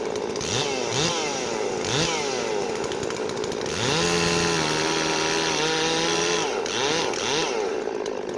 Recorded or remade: recorded